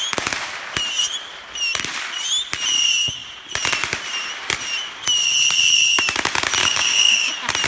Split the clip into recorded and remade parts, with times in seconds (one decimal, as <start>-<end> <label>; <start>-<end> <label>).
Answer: 0.0-6.6 recorded; 6.6-7.3 remade; 7.3-7.7 recorded